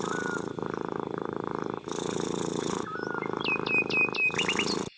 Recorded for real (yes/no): yes